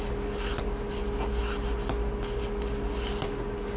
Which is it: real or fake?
real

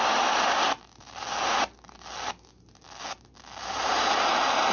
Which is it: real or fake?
real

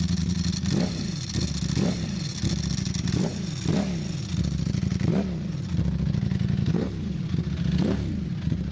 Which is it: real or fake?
real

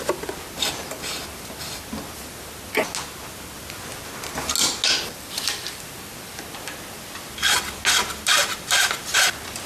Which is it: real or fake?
real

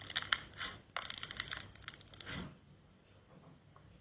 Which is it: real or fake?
real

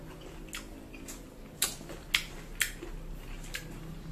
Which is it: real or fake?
real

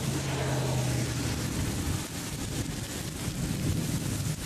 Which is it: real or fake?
real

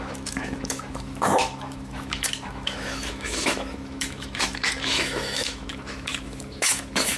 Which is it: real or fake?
fake